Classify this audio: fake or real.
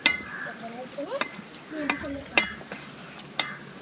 real